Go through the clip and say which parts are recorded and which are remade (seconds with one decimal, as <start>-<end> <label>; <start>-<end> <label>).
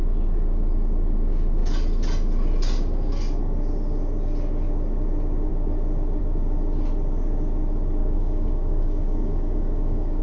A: 0.0-8.0 recorded; 8.0-10.2 remade